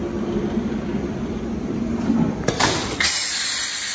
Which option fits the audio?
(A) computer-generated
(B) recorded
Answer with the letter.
B